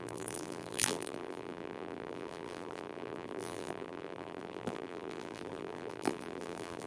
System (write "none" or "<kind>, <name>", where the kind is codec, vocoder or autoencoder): vocoder, BigVGAN v2